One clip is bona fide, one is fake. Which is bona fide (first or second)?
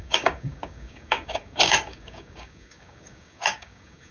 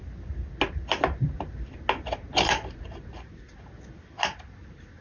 second